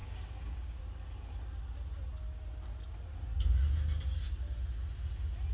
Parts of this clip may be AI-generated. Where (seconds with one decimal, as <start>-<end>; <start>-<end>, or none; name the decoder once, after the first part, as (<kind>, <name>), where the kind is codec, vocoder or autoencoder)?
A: 0.0-0.8 (codec, DAC)

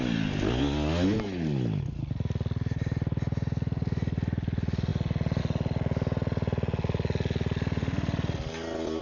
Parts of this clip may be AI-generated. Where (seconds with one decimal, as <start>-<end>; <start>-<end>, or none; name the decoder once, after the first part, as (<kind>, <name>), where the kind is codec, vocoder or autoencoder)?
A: none

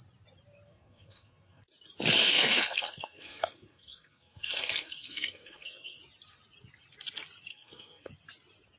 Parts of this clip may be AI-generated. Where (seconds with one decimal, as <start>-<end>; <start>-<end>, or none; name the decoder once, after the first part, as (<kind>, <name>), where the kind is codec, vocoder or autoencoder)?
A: 0.7-1.6 (codec, SNAC); 2.2-6.0; 7.5-8.1

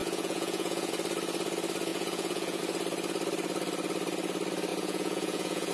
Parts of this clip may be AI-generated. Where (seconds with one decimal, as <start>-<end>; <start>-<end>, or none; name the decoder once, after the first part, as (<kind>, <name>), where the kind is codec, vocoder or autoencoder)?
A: 0.0-0.9 (vocoder, Vocos); 1.9-2.6; 4.7-5.7

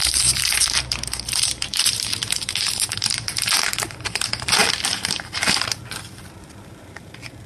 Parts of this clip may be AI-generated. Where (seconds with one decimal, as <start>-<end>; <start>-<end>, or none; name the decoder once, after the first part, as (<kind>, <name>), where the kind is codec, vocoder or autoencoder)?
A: 0.0-4.6 (vocoder, BigVGAN v2); 6.2-7.5

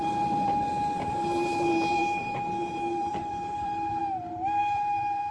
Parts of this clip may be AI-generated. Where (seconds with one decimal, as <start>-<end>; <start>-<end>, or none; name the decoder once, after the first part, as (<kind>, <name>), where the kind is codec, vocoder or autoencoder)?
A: 0.0-4.0 (vocoder, BigVGAN v2); 4.6-5.3

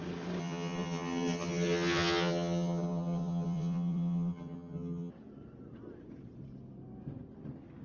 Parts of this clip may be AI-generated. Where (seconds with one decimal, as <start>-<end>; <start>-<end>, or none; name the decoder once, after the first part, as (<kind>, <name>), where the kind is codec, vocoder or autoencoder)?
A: 0.4-5.1 (vocoder, HiFi-GAN)

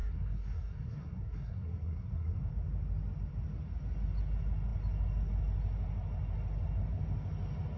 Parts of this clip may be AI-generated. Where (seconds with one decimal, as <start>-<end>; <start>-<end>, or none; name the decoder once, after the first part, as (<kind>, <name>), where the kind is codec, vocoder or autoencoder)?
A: 0.0-2.5 (codec, SNAC)